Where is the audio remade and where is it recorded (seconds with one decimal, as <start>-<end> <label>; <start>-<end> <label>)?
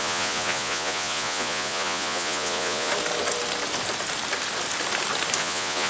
0.0-2.9 remade; 2.9-5.4 recorded; 5.4-5.9 remade